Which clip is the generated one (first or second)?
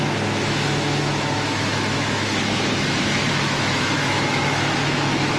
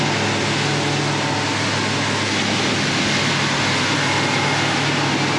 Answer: first